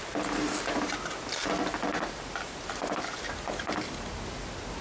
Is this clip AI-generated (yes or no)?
no